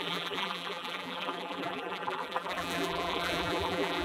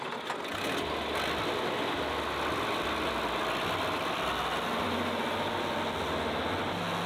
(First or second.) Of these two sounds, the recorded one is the second